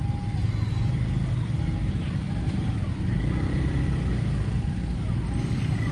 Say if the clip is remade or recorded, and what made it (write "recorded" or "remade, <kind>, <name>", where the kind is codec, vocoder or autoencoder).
recorded